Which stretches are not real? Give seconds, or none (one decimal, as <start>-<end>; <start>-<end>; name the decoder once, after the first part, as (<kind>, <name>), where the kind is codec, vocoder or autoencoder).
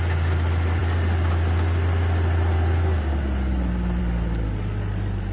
none